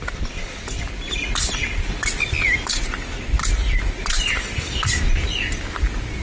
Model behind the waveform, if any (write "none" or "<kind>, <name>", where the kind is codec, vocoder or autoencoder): none